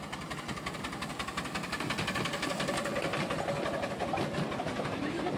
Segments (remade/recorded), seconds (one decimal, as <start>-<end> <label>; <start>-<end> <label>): 0.0-5.4 recorded